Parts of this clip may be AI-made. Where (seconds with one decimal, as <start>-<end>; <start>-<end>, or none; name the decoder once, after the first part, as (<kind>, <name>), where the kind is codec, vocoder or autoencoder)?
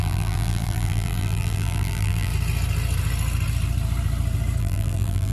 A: 0.0-2.3 (vocoder, BigVGAN v2); 4.6-5.3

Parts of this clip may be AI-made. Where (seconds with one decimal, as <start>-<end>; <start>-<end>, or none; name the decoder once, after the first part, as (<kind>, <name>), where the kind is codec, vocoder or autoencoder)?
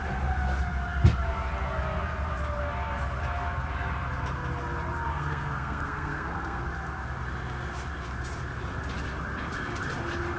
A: 5.1-6.6 (codec, SNAC)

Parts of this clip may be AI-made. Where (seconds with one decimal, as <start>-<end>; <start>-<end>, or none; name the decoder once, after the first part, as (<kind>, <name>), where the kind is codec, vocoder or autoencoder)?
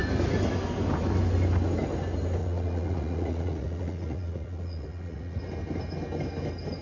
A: 2.4-5.4 (vocoder, Vocos)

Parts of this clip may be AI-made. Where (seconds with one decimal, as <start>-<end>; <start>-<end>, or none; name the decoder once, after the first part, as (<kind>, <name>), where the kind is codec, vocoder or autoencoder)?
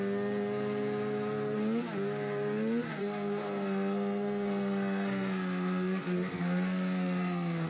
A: 2.9-7.7 (codec, SNAC)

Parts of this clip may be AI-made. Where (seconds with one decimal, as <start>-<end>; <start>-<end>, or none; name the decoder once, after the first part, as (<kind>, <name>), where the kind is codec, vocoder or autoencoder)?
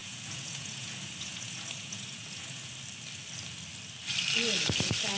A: 0.0-2.7 (vocoder, Vocos)